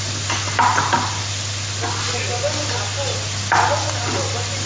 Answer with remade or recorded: recorded